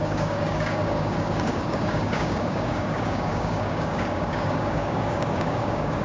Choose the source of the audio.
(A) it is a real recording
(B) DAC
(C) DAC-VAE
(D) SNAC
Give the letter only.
B